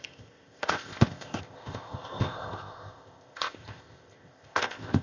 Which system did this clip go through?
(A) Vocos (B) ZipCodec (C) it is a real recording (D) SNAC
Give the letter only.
B